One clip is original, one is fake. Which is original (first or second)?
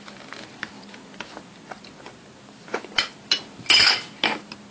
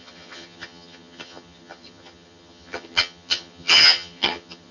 first